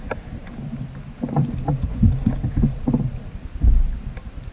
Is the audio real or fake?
real